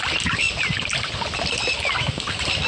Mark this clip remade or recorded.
recorded